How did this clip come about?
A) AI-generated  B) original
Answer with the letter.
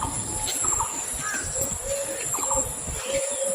B